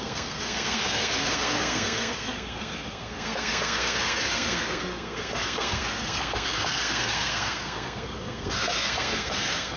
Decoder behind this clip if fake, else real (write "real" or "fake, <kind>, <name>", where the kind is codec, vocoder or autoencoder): fake, codec, SNAC